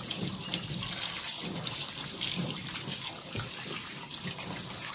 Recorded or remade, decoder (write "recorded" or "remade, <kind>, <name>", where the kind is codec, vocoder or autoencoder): remade, vocoder, BigVGAN v2